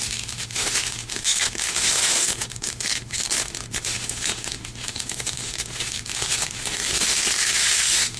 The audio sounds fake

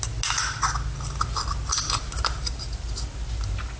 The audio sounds real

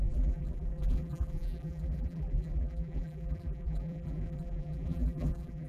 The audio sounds fake